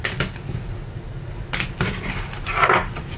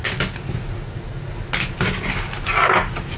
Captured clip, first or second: second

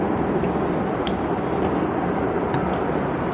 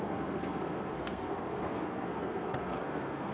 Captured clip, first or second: first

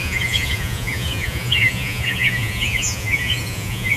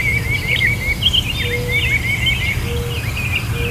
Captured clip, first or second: second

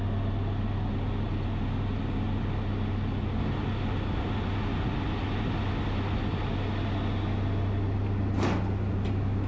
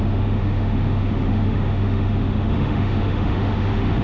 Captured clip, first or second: first